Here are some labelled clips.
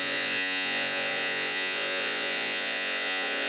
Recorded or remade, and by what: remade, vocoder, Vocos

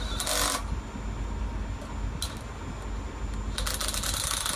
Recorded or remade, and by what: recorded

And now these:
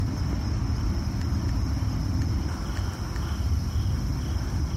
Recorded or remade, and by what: recorded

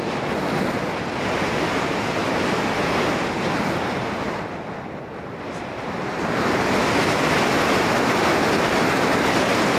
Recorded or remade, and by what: recorded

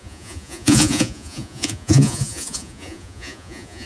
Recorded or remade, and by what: remade, vocoder, Vocos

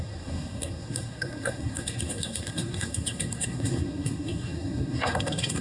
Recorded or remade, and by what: remade, codec, SNAC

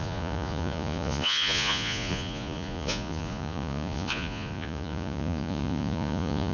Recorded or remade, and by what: remade, vocoder, Vocos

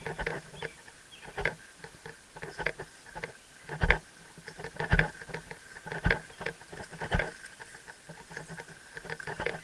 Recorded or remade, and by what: recorded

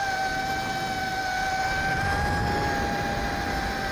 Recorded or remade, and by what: recorded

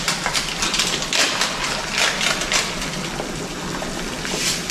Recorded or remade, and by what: recorded